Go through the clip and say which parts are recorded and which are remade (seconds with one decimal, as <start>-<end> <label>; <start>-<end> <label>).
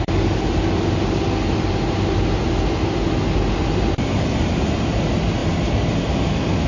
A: 0.0-6.7 recorded